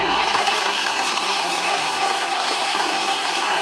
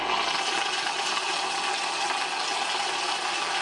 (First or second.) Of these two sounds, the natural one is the second